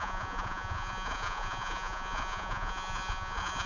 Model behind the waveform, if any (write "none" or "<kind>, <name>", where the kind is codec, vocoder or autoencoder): vocoder, Vocos